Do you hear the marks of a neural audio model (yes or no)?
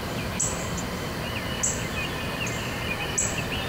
no